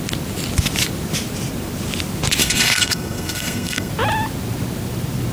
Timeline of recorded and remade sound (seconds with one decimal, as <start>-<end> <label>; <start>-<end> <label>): 0.0-2.4 recorded; 2.4-3.9 remade; 3.9-5.3 recorded